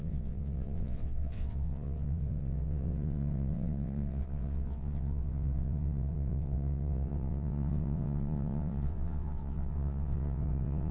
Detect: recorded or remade remade